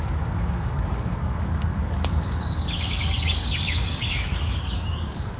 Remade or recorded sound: remade